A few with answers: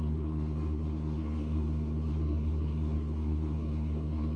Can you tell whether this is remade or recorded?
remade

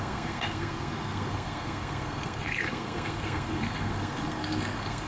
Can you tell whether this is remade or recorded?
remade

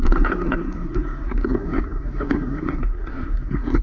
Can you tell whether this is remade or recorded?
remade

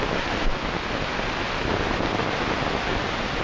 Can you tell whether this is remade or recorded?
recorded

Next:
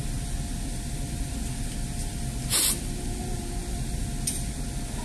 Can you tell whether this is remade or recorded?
recorded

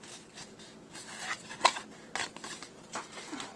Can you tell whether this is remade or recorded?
recorded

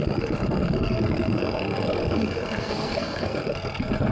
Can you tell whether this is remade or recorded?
remade